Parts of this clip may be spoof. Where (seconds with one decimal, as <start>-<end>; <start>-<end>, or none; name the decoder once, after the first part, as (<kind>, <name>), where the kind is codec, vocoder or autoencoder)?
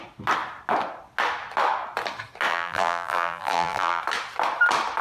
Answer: 2.5-4.0 (vocoder, BigVGAN v2)